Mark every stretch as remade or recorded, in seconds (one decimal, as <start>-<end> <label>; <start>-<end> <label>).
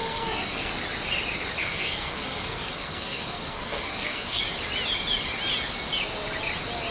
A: 0.0-0.7 remade; 0.7-1.6 recorded; 1.6-4.4 remade; 4.4-6.9 recorded